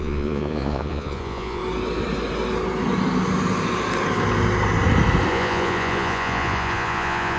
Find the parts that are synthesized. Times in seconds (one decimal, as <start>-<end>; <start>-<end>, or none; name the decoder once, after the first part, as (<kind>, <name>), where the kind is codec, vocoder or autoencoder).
0.0-1.6 (vocoder, Vocos); 5.3-7.4